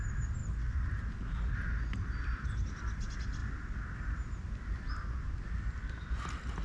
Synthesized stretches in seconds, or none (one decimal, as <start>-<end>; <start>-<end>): none